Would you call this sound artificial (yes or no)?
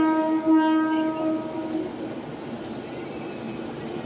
no